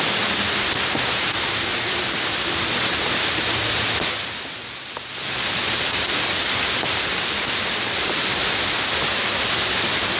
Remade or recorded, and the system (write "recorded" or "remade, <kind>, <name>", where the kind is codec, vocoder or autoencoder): remade, vocoder, BigVGAN v2